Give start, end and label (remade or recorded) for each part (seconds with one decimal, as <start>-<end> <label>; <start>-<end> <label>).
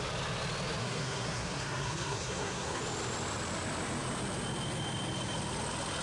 0.0-0.8 recorded; 0.8-2.8 remade; 2.8-6.0 recorded